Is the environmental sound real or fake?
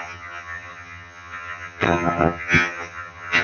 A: fake